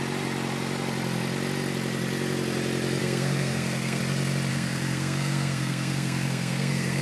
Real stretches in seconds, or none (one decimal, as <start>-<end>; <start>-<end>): 0.0-3.0; 4.0-4.5